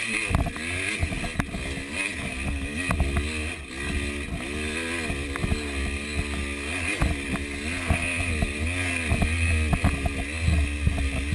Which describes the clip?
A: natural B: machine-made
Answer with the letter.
A